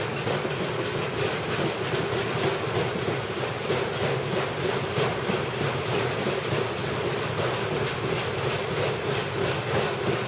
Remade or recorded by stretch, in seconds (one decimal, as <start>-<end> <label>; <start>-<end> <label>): 0.0-10.3 recorded